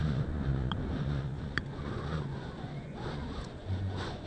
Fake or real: fake